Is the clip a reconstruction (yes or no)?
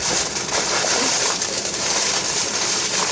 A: yes